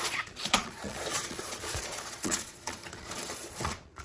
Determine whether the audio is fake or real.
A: fake